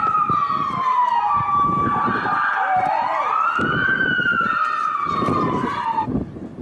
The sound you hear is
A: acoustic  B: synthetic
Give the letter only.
B